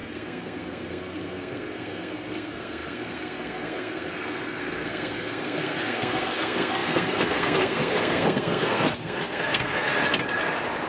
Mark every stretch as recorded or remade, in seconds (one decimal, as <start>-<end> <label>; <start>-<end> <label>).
0.0-9.9 remade; 9.9-10.9 recorded